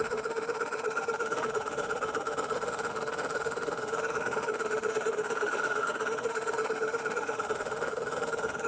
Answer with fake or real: fake